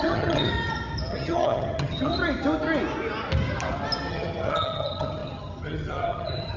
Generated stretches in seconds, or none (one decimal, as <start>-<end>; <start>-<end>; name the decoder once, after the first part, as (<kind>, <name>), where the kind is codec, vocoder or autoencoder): 0.0-0.5 (vocoder, HiFi-GAN); 1.1-2.1; 4.1-6.6